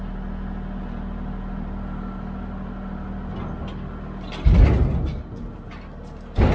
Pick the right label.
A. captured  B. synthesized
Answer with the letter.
A